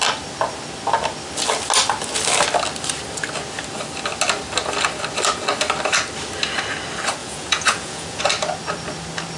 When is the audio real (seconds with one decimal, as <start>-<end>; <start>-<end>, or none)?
0.0-7.2; 8.2-9.4